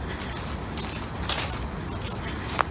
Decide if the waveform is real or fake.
real